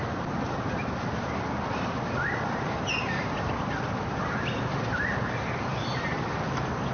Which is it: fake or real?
real